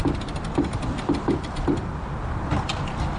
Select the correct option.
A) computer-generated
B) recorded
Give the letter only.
B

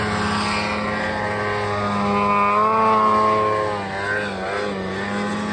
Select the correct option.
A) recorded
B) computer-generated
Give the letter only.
A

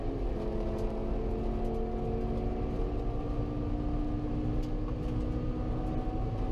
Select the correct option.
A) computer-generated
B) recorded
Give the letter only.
B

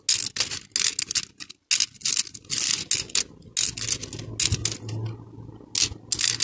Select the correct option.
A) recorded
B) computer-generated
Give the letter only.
A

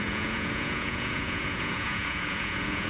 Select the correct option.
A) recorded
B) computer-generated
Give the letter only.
B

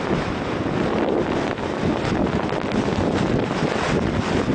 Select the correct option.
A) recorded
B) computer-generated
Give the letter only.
A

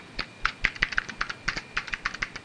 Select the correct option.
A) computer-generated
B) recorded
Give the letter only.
B